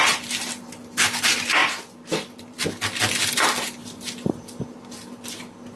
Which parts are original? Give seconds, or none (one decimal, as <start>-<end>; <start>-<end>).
0.0-5.8